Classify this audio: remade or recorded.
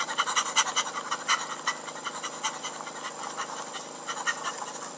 recorded